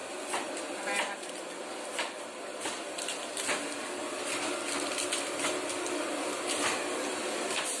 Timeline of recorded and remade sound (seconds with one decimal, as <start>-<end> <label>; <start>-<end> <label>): 0.0-7.8 recorded